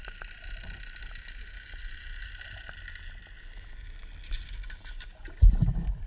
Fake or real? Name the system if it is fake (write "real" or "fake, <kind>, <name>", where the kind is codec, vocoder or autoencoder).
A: real